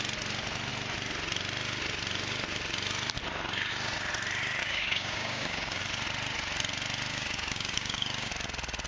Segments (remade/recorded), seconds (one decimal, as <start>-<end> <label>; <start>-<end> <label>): 0.0-4.6 recorded; 4.6-5.8 remade; 5.8-7.1 recorded; 7.1-8.3 remade; 8.3-8.9 recorded